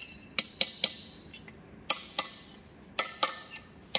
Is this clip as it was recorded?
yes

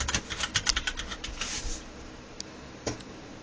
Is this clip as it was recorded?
yes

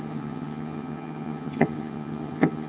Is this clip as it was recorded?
no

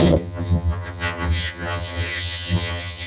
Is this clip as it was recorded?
no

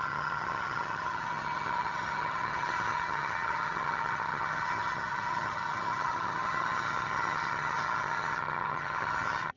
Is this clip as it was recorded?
no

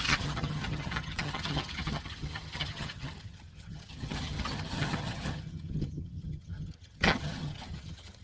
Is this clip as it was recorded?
no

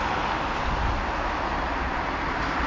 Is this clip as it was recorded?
yes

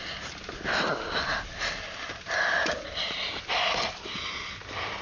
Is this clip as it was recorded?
yes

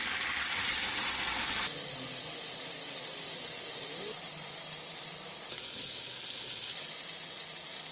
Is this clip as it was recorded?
yes